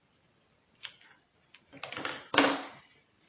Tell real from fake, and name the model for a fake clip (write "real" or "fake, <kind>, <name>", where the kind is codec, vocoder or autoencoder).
real